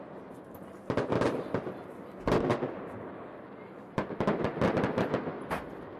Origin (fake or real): real